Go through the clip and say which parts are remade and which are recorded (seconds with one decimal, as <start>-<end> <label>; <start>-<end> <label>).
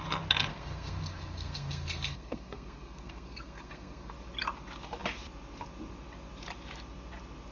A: 0.0-0.5 recorded; 0.5-4.1 remade; 4.1-7.5 recorded